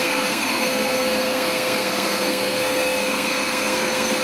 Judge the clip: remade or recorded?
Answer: remade